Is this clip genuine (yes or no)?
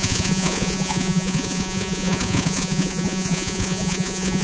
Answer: no